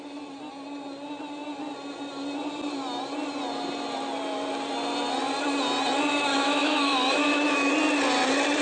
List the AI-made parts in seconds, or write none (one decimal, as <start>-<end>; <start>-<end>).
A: 6.3-7.7